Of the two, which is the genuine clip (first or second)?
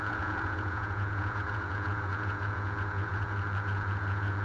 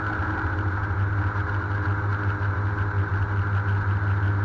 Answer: second